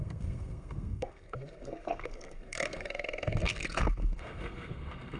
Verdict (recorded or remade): remade